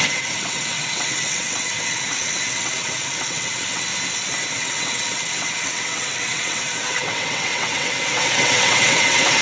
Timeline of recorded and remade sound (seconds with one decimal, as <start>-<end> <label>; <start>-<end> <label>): 0.0-3.9 remade; 3.9-4.5 recorded; 4.5-9.4 remade